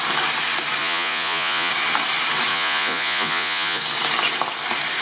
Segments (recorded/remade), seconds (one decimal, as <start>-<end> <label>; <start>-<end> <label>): 0.0-0.8 recorded; 0.8-1.7 remade; 1.7-2.5 recorded; 2.5-3.8 remade; 3.8-5.0 recorded